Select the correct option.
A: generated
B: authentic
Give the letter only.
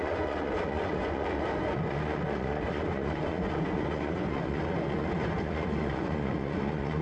A